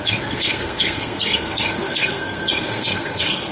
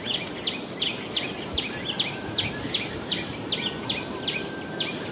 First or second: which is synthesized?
first